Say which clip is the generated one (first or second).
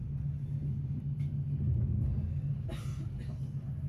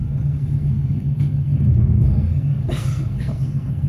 second